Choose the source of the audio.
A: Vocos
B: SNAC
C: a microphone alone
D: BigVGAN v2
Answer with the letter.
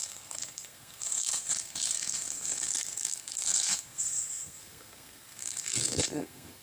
B